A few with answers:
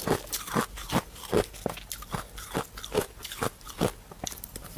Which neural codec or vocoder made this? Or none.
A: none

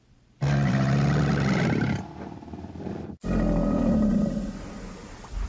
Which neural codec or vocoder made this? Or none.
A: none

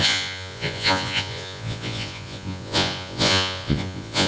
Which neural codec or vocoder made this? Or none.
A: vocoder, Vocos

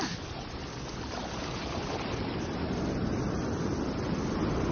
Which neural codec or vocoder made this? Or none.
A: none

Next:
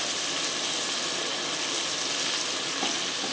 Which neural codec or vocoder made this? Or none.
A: none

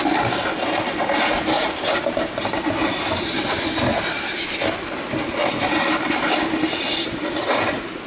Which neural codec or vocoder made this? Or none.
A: none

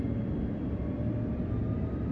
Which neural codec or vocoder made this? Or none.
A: none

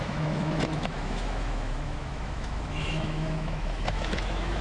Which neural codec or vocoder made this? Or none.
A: autoencoder, DAC-VAE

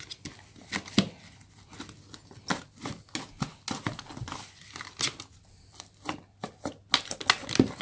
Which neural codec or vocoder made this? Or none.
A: none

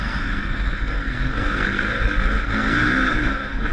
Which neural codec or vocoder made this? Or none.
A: codec, SNAC